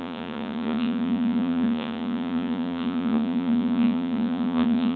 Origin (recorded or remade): remade